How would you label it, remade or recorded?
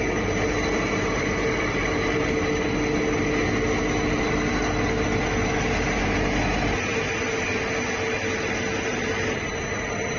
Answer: recorded